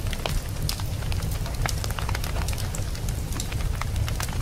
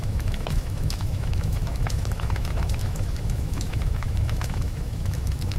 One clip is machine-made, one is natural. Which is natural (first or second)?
first